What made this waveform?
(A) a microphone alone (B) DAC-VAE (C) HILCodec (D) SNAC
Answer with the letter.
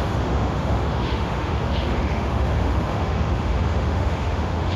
B